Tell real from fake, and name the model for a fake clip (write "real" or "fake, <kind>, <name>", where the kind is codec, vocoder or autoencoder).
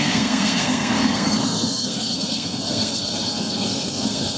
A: fake, codec, SNAC